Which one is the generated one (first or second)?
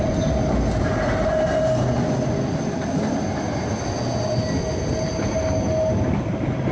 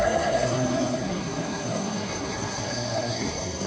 second